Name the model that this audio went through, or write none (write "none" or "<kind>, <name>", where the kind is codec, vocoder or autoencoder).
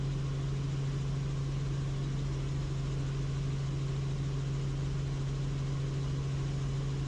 none